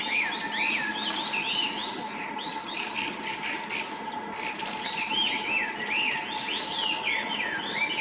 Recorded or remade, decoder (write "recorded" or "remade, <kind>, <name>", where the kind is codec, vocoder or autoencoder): recorded